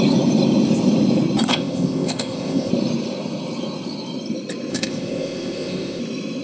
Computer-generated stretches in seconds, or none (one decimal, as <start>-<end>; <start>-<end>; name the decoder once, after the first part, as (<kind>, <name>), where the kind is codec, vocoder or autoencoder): 1.5-2.7 (codec, ZipCodec); 4.7-6.0

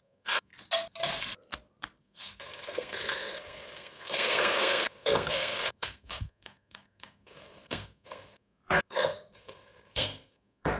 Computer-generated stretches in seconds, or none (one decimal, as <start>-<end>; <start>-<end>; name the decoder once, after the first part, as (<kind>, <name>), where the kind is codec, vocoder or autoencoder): 0.0-0.5 (codec, SNAC); 2.0-10.8

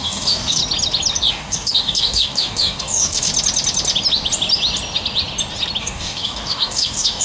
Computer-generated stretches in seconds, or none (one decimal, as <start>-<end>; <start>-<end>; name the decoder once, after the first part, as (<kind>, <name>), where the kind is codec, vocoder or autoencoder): 0.0-0.6 (codec, DAC); 1.3-3.3; 5.8-7.2

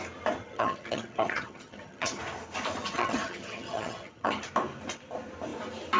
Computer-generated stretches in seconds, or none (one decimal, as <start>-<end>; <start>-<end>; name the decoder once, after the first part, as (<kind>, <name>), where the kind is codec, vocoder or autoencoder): 0.4-2.2 (vocoder, HiFi-GAN); 2.8-4.4

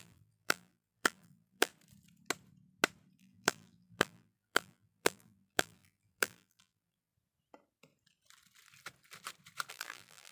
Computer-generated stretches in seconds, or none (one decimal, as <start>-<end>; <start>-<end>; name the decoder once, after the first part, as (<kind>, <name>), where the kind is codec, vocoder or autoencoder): 0.0-1.7 (vocoder, BigVGAN v2); 3.2-7.1; 9.7-10.3

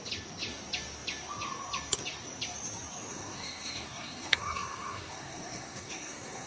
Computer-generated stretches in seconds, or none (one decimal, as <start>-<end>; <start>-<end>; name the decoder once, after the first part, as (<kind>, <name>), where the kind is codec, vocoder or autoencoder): 3.1-6.5 (codec, SNAC)